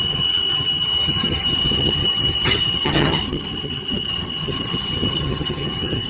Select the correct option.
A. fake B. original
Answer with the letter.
A